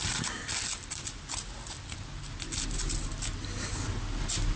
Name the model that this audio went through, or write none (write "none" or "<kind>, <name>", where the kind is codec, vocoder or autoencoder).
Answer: none